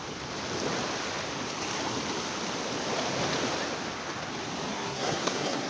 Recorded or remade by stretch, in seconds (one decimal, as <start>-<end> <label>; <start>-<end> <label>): 0.0-4.7 recorded; 4.7-5.7 remade